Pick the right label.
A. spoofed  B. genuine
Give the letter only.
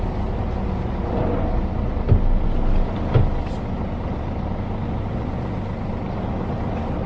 B